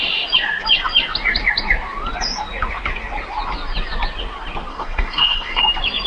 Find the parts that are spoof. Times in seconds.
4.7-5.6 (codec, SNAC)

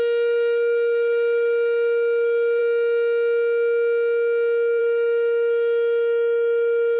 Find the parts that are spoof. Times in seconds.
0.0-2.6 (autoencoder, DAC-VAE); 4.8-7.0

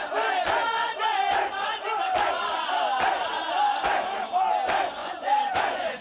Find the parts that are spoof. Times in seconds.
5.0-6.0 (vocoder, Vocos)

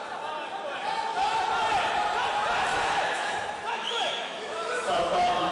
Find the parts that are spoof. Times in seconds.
2.7-5.5 (autoencoder, DAC-VAE)

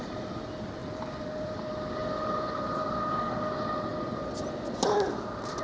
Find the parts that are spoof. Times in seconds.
0.8-1.6 (vocoder, BigVGAN v2); 2.0-3.3

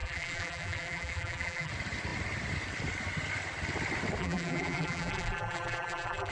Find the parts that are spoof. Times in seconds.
0.0-1.7 (vocoder, BigVGAN v2); 4.2-6.3